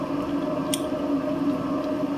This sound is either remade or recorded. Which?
recorded